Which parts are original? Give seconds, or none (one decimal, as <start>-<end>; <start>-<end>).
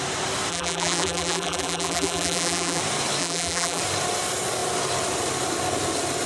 0.0-0.5; 2.8-3.2; 3.8-6.3